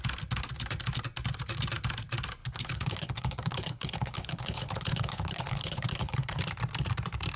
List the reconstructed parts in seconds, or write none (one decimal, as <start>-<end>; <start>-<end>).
2.4-6.4